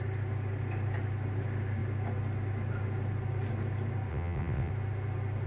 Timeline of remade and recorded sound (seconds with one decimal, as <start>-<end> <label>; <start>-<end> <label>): 0.0-4.1 recorded; 4.1-4.7 remade; 4.7-5.5 recorded